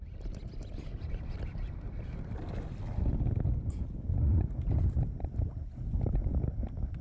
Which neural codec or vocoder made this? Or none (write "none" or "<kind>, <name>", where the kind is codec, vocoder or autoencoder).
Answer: none